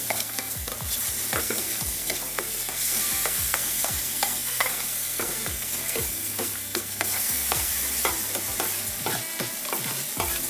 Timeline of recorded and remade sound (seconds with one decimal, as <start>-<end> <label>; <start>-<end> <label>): 0.0-0.7 remade; 0.7-1.4 recorded; 1.4-7.7 remade; 7.7-10.5 recorded